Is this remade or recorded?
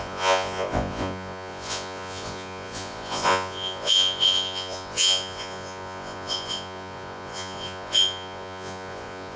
remade